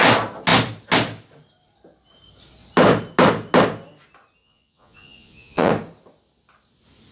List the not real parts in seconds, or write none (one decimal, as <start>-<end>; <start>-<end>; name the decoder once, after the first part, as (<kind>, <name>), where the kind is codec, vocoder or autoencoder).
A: 4.4-5.7 (vocoder, Vocos)